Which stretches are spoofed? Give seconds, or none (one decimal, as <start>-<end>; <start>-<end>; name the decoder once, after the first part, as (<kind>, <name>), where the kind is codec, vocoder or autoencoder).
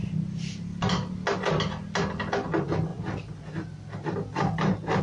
none